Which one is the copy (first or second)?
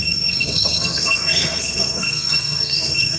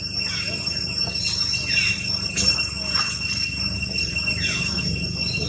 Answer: first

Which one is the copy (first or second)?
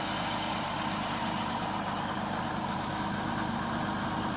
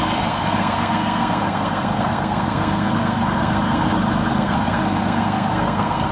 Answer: second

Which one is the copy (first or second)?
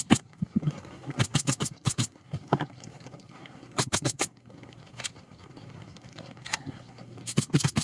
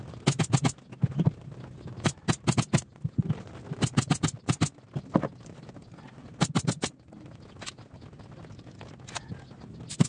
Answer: first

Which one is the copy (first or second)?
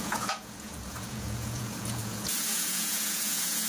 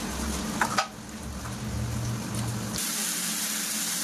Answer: first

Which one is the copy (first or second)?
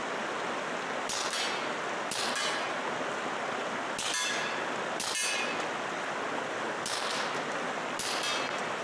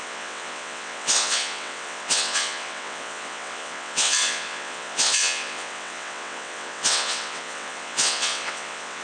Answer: second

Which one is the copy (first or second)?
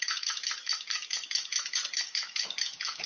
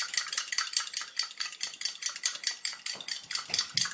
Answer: first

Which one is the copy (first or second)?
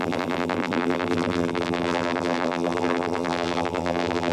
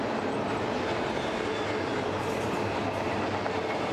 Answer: first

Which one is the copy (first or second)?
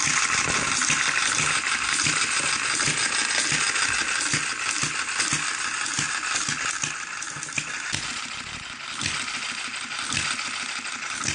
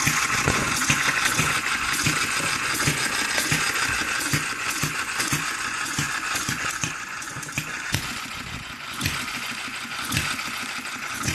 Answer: second